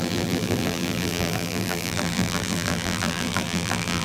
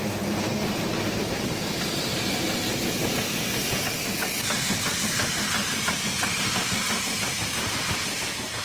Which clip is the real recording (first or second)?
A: second